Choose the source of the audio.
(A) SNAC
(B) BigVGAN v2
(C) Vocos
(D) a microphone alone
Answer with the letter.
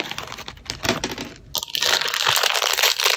D